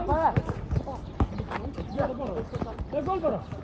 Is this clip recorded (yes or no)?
yes